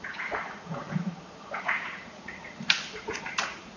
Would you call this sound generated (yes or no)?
yes